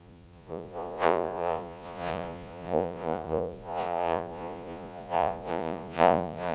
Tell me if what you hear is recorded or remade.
remade